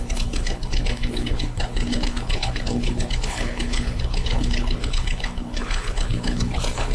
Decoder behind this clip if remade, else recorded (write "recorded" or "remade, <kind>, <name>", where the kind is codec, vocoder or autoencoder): remade, codec, HILCodec